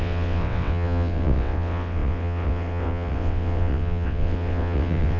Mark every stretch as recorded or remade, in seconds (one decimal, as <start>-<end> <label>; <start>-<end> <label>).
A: 0.0-5.2 remade